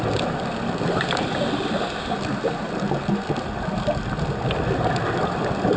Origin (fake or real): real